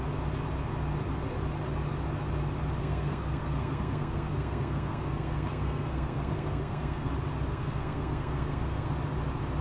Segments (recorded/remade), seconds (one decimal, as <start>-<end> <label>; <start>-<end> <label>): 0.0-2.8 recorded; 2.8-7.1 remade; 7.1-7.5 recorded; 7.5-8.9 remade; 8.9-9.6 recorded